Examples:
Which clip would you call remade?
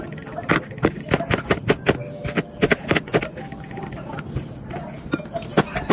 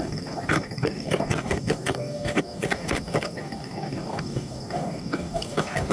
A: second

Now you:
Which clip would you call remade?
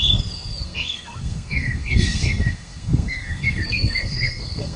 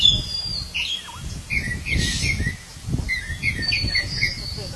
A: first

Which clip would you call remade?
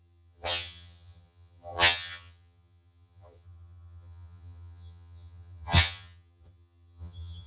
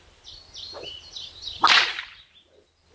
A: first